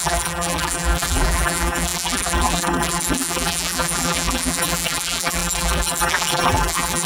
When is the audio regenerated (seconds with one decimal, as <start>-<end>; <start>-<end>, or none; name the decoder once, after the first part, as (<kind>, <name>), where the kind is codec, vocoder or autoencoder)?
0.0-7.1 (vocoder, BigVGAN v2)